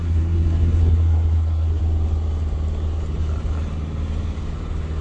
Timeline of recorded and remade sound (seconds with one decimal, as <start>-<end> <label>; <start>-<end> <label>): 0.0-1.8 remade; 1.8-5.0 recorded